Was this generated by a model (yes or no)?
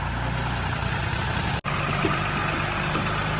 no